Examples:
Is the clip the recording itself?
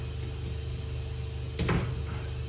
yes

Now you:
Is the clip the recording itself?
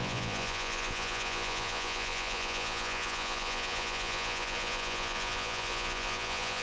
no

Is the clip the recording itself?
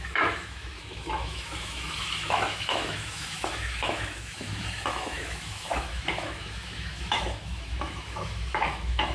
no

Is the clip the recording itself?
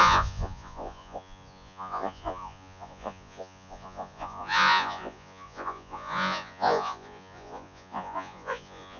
no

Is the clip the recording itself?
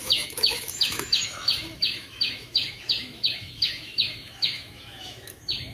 no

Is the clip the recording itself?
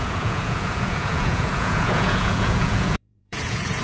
no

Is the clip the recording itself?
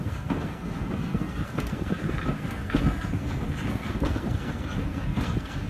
no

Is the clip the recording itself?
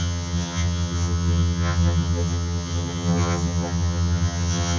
no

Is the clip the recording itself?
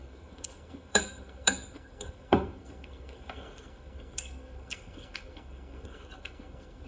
no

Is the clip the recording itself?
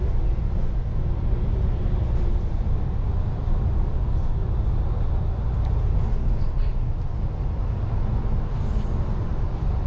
yes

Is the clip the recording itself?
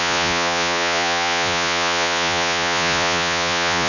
no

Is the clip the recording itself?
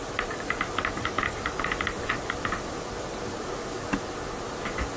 yes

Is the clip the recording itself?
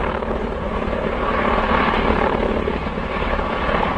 no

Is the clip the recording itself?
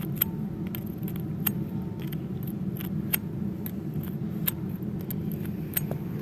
yes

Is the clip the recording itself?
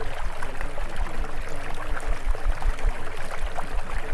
yes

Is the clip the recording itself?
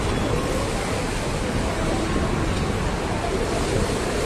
yes